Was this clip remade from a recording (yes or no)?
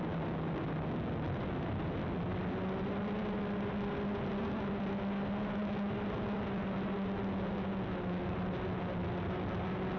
no